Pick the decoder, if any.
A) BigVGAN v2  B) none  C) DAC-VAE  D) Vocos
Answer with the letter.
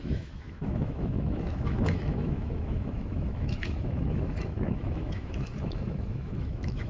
C